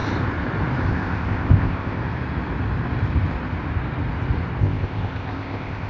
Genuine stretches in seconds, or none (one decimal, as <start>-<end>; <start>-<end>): 0.0-0.9; 2.0-4.6